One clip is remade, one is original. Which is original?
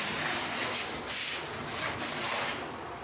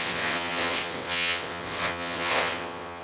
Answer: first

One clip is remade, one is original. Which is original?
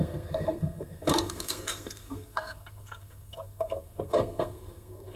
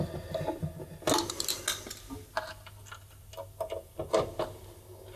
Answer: second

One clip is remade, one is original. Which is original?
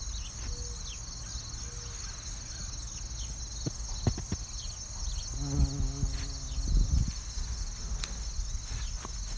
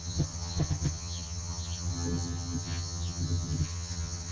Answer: first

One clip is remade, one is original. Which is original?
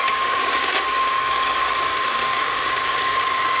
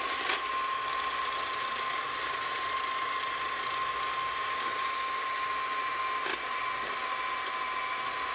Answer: second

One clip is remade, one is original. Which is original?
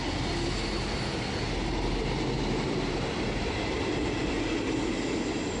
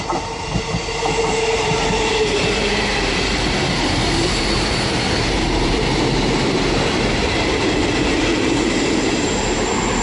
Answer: first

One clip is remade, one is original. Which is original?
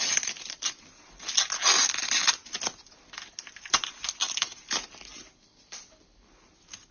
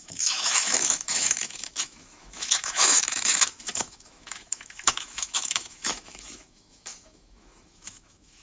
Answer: first